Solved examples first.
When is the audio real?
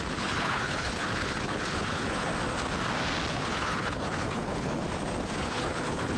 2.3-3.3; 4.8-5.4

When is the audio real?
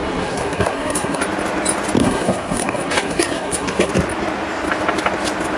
1.2-2.0; 3.9-5.6